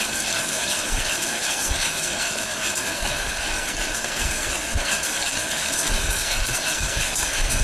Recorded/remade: remade